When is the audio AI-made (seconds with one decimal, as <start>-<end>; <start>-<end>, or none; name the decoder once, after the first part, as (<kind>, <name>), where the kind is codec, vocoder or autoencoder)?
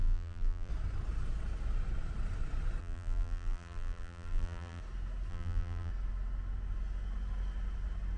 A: 0.0-0.7 (vocoder, BigVGAN v2); 2.8-4.8; 5.3-5.9